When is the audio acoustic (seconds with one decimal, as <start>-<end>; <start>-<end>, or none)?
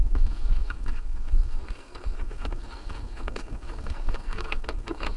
none